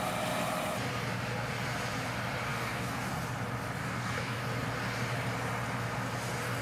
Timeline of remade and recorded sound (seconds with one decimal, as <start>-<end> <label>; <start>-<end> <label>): 0.0-2.5 recorded; 2.5-3.1 remade; 3.1-3.8 recorded; 3.8-4.4 remade; 4.4-6.6 recorded